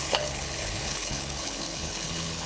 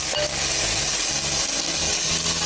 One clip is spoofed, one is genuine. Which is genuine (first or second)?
second